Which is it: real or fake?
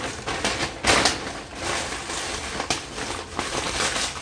real